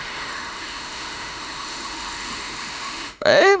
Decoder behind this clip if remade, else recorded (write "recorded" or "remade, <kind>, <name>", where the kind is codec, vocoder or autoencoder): remade, autoencoder, DAC-VAE